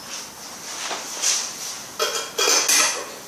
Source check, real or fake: real